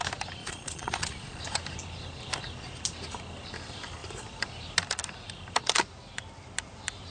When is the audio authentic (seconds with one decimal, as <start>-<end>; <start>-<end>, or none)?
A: 0.0-0.4; 1.4-7.1